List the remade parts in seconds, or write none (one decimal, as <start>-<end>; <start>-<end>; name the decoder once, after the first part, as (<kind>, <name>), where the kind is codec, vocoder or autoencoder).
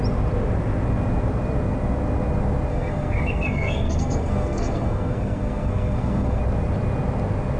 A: 2.7-6.4 (codec, SNAC)